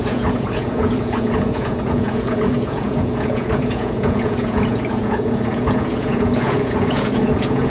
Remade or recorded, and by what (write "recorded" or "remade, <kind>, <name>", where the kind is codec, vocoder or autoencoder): remade, vocoder, Vocos